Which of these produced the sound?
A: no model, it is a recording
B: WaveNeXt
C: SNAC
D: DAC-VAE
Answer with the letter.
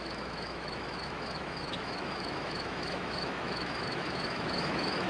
D